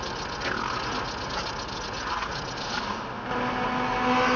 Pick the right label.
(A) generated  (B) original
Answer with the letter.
B